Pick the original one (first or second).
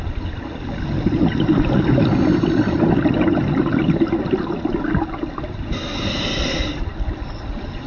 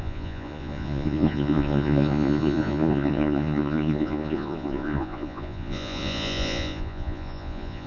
first